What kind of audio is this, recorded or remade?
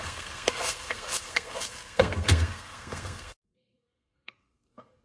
remade